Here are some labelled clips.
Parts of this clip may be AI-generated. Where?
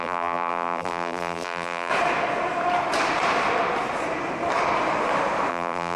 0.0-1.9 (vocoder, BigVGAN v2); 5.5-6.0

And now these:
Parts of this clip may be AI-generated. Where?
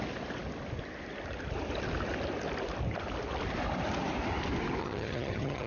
4.8-5.7 (vocoder, HiFi-GAN)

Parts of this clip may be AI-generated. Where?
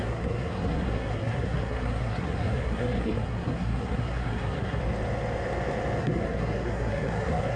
0.0-4.8 (codec, SNAC); 6.0-7.6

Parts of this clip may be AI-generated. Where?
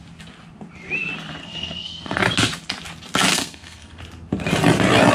1.4-2.2 (codec, SNAC); 3.3-4.0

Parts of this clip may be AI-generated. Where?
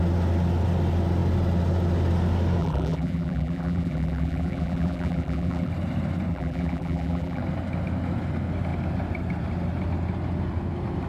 2.6-5.7 (vocoder, BigVGAN v2); 6.3-7.4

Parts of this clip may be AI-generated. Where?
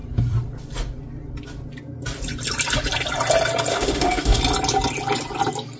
3.7-4.4 (autoencoder, DAC-VAE)